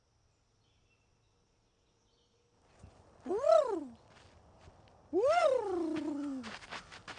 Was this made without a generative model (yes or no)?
yes